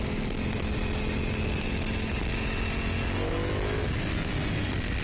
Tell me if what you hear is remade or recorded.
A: recorded